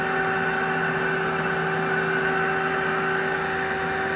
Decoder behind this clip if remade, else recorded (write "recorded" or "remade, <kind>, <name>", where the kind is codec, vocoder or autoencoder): recorded